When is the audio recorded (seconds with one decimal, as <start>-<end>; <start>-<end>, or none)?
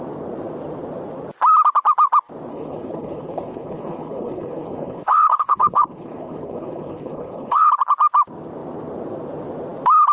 0.0-2.5; 7.7-10.1